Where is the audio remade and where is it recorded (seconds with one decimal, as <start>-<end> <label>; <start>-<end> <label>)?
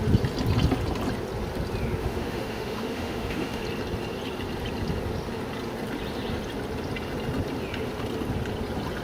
0.0-2.0 recorded; 2.0-3.6 remade; 3.6-9.0 recorded